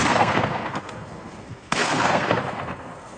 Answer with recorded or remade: remade